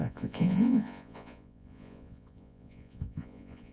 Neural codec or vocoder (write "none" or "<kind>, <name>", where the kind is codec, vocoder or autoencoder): vocoder, Vocos